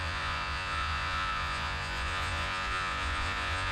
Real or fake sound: fake